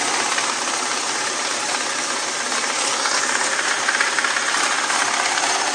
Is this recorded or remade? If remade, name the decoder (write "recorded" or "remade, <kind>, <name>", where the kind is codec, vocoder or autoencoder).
recorded